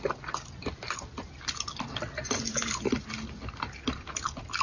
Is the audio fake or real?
real